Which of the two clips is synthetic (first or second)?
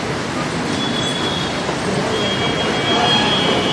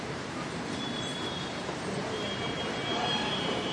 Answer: second